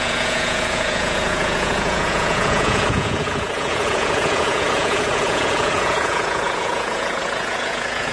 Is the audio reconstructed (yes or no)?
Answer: yes